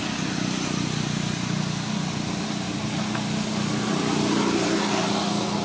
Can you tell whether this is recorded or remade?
recorded